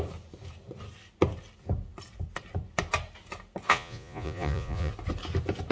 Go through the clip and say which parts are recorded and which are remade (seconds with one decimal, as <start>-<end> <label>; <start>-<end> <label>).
0.0-3.7 recorded; 3.7-4.9 remade; 4.9-5.7 recorded